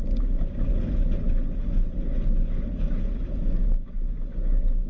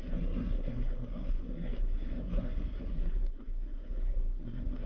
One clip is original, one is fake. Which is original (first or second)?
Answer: first